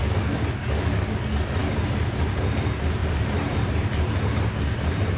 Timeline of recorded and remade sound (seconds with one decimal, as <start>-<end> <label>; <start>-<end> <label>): 0.0-3.0 recorded; 3.0-4.4 remade; 4.4-5.2 recorded